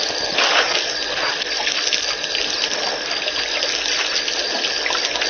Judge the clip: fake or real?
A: real